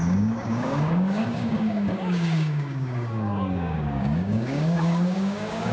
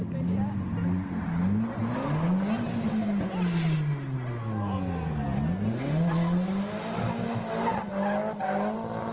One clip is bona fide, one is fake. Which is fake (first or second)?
first